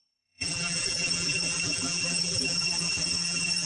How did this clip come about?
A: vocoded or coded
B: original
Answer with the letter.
A